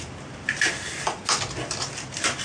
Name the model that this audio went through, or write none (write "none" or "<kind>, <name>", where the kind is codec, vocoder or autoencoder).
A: none